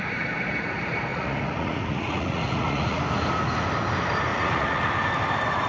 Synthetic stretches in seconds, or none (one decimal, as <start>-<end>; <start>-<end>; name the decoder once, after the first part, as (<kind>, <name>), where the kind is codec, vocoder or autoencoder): 1.1-3.0 (vocoder, Vocos); 4.3-4.9